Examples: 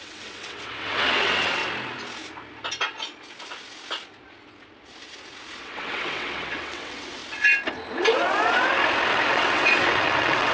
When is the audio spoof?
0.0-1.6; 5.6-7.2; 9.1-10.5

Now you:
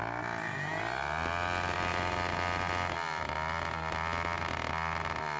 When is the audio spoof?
none

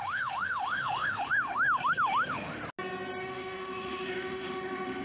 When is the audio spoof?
0.0-2.6; 3.2-5.0